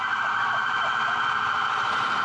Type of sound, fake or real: fake